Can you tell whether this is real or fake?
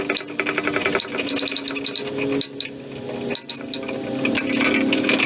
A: real